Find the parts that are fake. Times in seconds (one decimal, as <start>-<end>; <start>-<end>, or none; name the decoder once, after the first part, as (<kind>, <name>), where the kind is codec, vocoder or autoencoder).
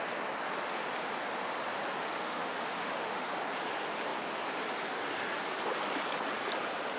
2.0-3.3 (autoencoder, DAC-VAE)